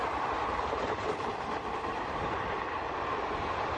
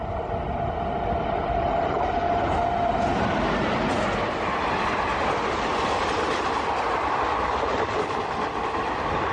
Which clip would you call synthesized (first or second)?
first